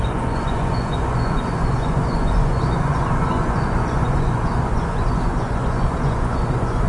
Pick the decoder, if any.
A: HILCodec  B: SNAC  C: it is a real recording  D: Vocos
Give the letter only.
D